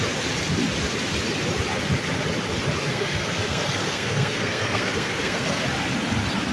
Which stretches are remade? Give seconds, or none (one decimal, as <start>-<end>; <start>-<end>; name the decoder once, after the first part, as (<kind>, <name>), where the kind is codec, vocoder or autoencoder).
2.8-5.6 (codec, SNAC)